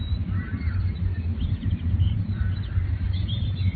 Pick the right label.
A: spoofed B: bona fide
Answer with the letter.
A